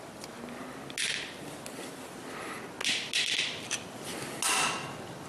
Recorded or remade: recorded